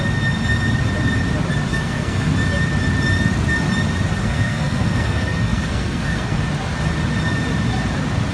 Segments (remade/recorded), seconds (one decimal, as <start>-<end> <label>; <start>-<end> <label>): 0.0-1.7 recorded; 1.7-2.3 remade; 2.3-4.2 recorded; 4.2-6.4 remade; 6.4-8.3 recorded